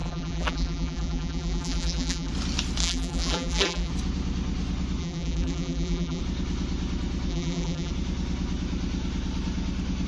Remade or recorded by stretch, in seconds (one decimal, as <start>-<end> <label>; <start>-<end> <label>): 0.0-2.3 remade; 2.3-2.8 recorded; 2.8-3.9 remade; 3.9-5.0 recorded; 5.0-6.2 remade; 6.2-7.3 recorded; 7.3-7.9 remade; 7.9-10.1 recorded